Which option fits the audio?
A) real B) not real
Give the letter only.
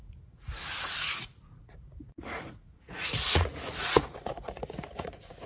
B